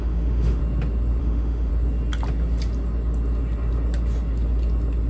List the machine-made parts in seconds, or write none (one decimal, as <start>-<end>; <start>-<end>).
0.0-0.6; 1.2-1.7

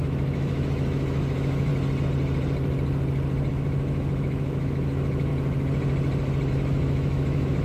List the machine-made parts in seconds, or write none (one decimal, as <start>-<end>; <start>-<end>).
0.0-1.7; 3.5-5.3; 6.5-7.6

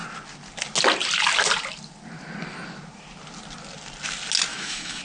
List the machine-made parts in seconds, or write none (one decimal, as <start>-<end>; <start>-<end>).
4.5-5.0

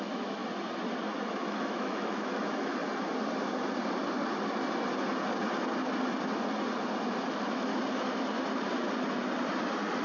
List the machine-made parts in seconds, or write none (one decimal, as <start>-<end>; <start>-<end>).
0.0-0.4; 1.3-2.7; 7.3-7.7